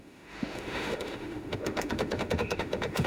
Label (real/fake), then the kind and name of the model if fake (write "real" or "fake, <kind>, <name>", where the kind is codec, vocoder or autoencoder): fake, autoencoder, DAC-VAE